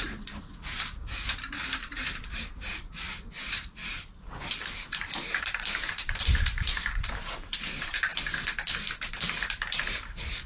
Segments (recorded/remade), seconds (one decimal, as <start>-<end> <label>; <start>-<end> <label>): 0.0-1.2 remade; 1.2-1.9 recorded; 1.9-3.8 remade; 3.8-4.7 recorded; 4.7-8.1 remade; 8.1-9.1 recorded; 9.1-10.5 remade